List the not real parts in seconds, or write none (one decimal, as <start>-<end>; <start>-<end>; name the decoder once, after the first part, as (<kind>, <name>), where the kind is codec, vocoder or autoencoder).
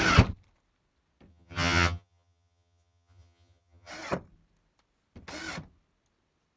1.3-3.9 (vocoder, HiFi-GAN)